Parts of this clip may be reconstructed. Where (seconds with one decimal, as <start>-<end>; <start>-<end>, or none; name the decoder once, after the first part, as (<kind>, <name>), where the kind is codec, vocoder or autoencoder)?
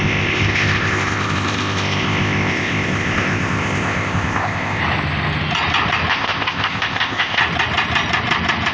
0.0-4.8 (codec, ZipCodec); 6.1-7.4